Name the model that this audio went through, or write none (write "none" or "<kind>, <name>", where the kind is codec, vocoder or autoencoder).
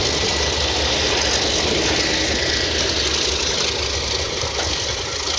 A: none